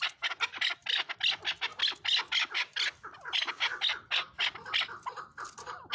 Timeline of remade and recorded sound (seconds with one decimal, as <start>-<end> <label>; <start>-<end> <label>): 0.0-5.9 recorded